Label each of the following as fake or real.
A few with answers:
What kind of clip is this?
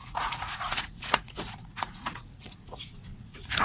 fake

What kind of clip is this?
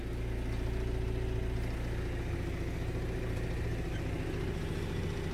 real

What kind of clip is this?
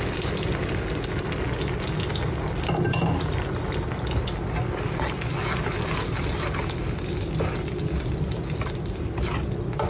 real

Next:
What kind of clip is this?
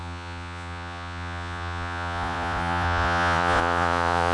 fake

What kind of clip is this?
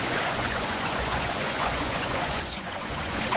fake